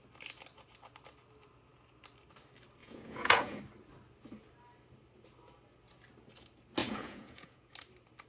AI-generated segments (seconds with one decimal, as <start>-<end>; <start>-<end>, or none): 2.8-3.6; 6.8-7.7